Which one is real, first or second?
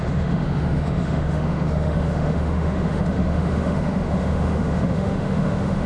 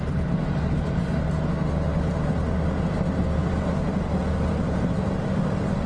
second